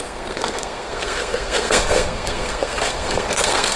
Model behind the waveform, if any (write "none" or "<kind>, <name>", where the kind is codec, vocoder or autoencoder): codec, SNAC